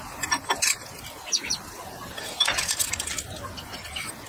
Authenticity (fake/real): fake